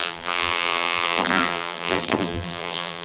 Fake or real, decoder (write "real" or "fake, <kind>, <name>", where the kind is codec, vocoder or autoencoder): fake, vocoder, BigVGAN v2